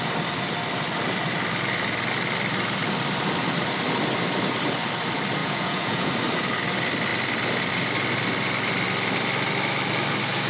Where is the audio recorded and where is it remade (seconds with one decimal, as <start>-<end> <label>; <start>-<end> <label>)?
0.0-5.4 recorded; 5.4-6.1 remade; 6.1-10.5 recorded